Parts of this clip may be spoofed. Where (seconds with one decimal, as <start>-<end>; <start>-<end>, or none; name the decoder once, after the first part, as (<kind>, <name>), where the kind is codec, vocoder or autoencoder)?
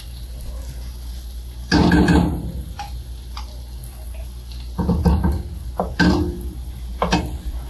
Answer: none